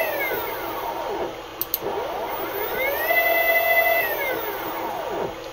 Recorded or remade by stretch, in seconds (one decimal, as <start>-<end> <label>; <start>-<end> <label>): 0.0-0.4 recorded; 0.4-0.9 remade; 0.9-5.5 recorded